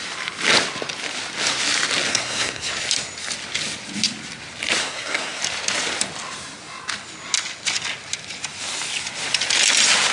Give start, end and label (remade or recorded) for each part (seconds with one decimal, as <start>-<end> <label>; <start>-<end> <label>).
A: 0.0-2.1 recorded; 2.1-2.7 remade; 2.7-4.8 recorded; 4.8-5.4 remade; 5.4-10.1 recorded